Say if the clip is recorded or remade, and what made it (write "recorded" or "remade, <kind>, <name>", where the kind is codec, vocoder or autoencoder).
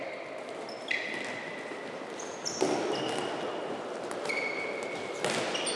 recorded